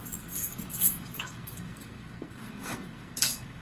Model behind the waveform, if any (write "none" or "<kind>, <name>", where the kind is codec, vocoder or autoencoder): codec, SNAC